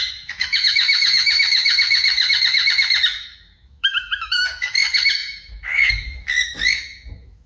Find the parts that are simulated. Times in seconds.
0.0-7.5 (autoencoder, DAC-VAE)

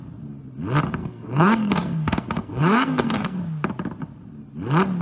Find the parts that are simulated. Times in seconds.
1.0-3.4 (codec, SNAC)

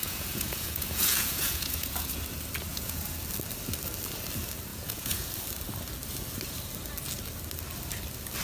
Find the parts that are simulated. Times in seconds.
0.0-2.2 (vocoder, Vocos); 2.7-3.2; 4.7-5.3

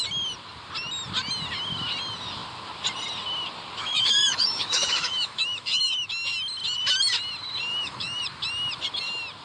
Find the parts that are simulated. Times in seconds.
3.8-6.1 (autoencoder, DAC-VAE); 7.7-8.2